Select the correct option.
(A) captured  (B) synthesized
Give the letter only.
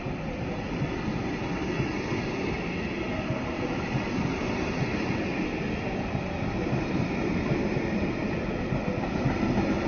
A